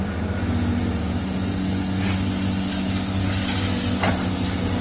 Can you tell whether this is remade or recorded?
recorded